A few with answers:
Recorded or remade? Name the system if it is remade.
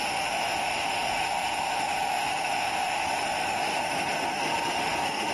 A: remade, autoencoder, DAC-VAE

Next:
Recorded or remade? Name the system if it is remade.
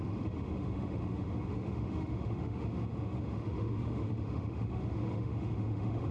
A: remade, autoencoder, DAC-VAE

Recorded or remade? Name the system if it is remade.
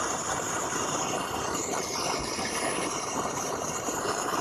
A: remade, vocoder, BigVGAN v2